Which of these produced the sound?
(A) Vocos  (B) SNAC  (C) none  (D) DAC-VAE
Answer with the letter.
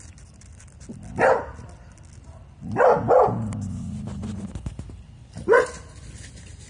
C